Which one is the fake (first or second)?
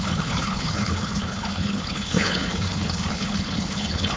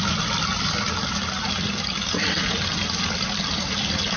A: first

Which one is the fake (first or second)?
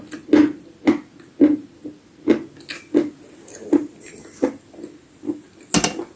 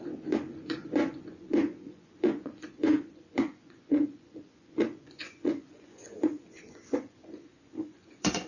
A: second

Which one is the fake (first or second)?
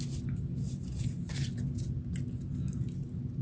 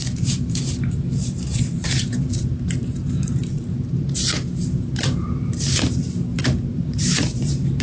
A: second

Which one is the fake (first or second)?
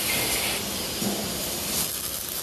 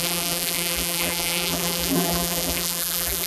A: second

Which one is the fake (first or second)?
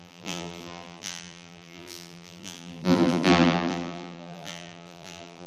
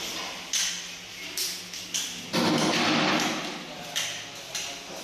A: first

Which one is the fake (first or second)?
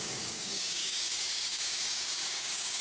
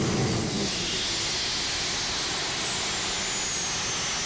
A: first